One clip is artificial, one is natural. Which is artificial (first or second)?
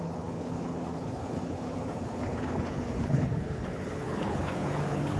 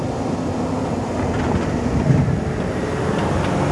first